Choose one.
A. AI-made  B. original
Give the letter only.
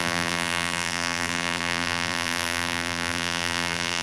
A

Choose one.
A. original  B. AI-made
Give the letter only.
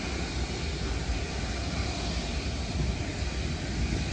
A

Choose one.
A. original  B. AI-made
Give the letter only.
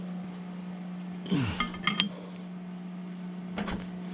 A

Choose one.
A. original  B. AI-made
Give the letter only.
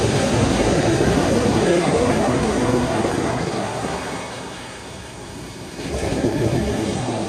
B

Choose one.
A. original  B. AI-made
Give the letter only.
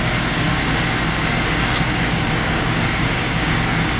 B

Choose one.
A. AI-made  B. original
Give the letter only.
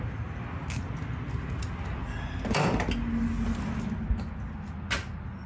B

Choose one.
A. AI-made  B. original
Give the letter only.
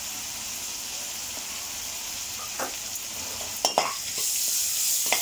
B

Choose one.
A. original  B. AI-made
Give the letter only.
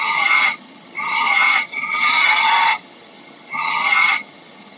B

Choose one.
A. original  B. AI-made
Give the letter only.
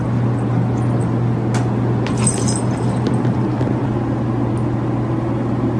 A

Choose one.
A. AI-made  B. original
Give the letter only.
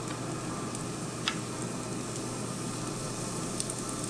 B